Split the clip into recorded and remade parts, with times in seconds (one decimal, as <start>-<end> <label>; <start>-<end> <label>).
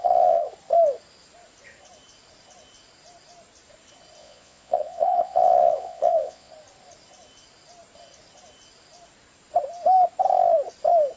0.0-0.5 remade; 0.5-4.2 recorded; 4.2-6.5 remade; 6.5-11.2 recorded